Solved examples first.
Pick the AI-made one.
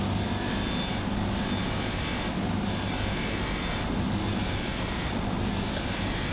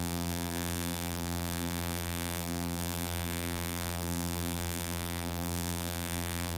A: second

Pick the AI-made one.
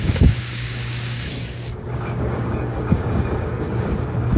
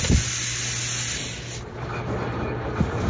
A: first